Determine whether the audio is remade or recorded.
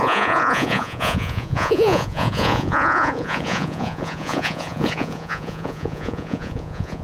remade